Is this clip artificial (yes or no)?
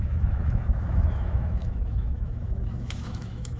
yes